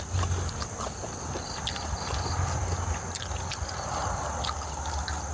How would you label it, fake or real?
real